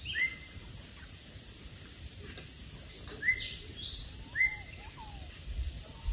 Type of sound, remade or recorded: remade